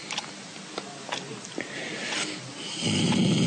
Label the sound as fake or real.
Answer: real